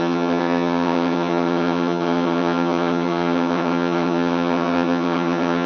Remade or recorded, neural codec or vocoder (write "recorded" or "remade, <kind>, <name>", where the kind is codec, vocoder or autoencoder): remade, vocoder, HiFi-GAN